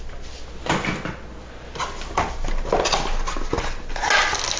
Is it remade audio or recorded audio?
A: recorded